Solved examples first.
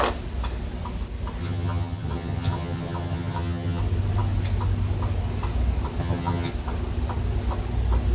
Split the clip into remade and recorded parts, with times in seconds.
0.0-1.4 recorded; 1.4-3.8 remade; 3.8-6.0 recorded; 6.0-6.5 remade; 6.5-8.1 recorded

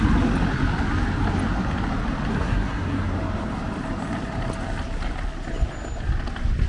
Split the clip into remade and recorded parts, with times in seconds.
0.0-2.3 recorded; 2.3-3.0 remade; 3.0-6.7 recorded

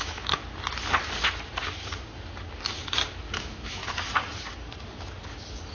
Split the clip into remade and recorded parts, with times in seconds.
0.0-0.4 remade; 0.4-3.4 recorded; 3.4-3.8 remade; 3.8-5.7 recorded